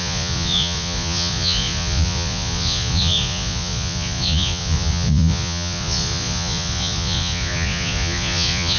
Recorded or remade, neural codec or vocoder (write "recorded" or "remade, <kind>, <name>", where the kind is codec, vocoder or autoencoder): remade, vocoder, Vocos